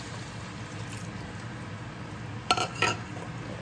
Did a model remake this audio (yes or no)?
no